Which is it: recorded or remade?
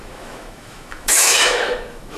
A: remade